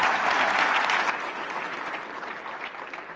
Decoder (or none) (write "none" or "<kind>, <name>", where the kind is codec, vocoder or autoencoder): none